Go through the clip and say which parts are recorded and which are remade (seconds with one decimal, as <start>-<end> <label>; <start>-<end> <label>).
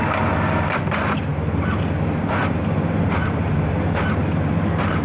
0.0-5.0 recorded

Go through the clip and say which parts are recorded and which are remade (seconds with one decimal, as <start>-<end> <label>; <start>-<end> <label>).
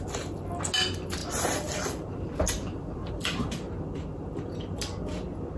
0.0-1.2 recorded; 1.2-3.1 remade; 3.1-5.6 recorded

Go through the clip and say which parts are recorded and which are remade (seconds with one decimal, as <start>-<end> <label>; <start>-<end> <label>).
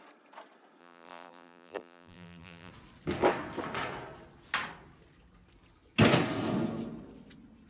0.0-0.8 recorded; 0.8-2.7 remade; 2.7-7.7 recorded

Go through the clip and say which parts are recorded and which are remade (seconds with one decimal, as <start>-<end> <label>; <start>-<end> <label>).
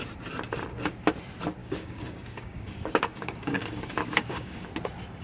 0.0-1.6 recorded; 1.6-4.7 remade; 4.7-5.2 recorded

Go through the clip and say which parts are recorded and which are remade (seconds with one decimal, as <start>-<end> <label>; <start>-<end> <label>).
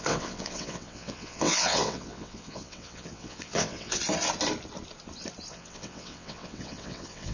0.0-4.0 remade; 4.0-5.5 recorded; 5.5-7.3 remade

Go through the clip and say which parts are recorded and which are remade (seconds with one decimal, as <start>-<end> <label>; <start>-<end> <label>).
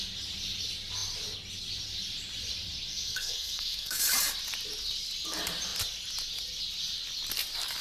0.0-2.9 recorded; 2.9-4.0 remade; 4.0-7.8 recorded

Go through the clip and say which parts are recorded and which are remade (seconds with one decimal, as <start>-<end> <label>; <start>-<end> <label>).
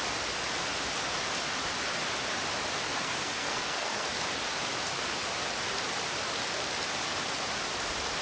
0.0-2.9 recorded; 2.9-4.1 remade; 4.1-8.2 recorded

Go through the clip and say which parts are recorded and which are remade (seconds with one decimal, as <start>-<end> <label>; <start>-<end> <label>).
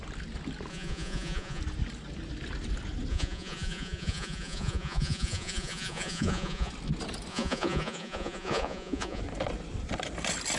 0.0-0.7 recorded; 0.7-1.6 remade; 1.6-3.1 recorded; 3.1-6.7 remade; 6.7-7.3 recorded; 7.3-9.2 remade; 9.2-10.6 recorded